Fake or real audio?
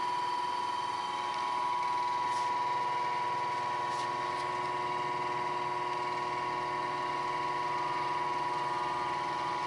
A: real